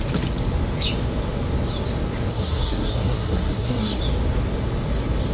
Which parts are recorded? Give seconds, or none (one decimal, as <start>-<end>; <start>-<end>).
0.0-2.3; 4.0-5.3

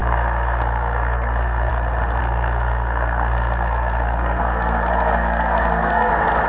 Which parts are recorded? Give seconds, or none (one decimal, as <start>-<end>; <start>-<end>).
1.7-2.2; 6.1-6.5

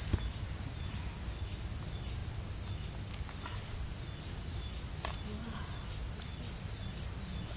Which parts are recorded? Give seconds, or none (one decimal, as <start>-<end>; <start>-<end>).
0.0-7.6

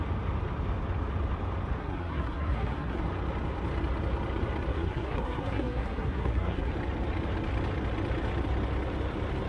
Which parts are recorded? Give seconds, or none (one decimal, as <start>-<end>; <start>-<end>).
0.0-1.8; 3.0-4.7; 6.7-9.5